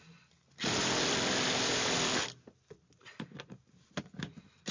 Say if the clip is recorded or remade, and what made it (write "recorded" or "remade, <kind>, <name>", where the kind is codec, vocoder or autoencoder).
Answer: recorded